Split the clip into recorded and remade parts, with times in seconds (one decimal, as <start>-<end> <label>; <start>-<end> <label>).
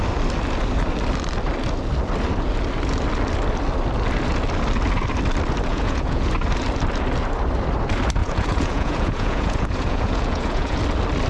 0.0-5.7 recorded; 5.7-6.3 remade; 6.3-8.2 recorded; 8.2-10.8 remade; 10.8-11.3 recorded